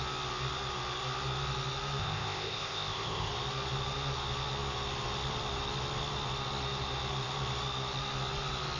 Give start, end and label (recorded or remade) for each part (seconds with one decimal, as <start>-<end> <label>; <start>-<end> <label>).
0.0-2.0 recorded; 2.0-3.3 remade; 3.3-8.8 recorded